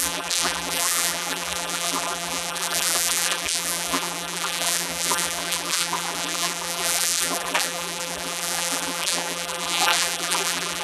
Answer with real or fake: fake